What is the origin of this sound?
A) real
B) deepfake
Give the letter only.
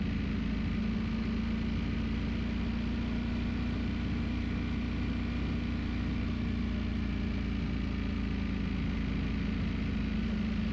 A